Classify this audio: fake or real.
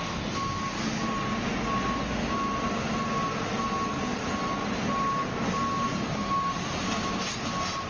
real